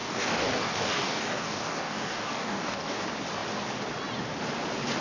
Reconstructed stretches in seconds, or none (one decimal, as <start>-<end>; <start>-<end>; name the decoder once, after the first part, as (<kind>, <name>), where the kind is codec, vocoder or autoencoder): 0.0-3.0 (codec, DAC)